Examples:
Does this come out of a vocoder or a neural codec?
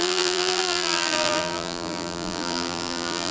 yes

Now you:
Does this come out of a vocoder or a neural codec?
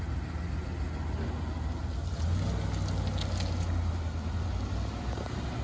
no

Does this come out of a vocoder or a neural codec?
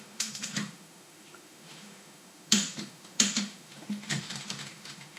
yes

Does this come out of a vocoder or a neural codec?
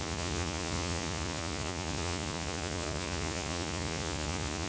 yes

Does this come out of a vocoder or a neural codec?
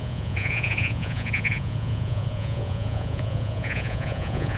yes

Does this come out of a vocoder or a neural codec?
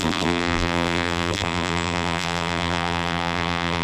yes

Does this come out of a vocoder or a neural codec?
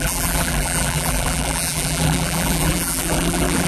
yes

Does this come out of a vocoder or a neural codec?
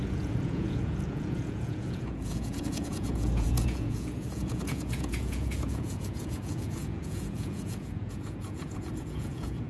yes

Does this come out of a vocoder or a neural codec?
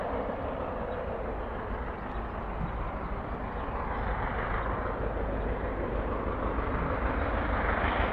no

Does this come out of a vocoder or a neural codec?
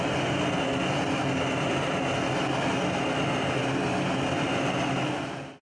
no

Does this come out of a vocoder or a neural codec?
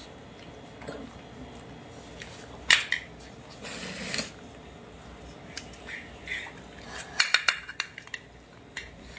no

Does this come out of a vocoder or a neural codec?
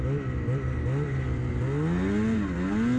no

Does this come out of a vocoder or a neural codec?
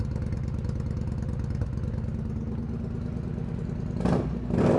no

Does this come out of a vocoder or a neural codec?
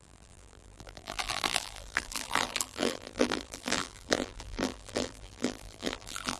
yes